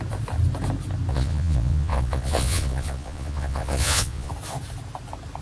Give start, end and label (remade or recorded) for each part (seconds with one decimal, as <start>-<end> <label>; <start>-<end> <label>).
0.0-1.1 recorded; 1.1-4.3 remade; 4.3-5.4 recorded